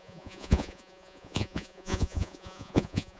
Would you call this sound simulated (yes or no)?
yes